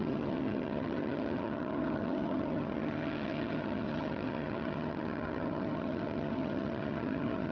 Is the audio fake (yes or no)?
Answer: yes